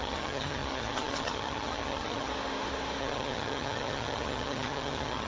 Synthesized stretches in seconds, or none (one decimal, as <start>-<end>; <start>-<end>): 0.0-2.3; 3.0-5.3